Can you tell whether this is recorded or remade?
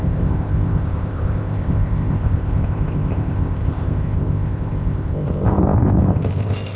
remade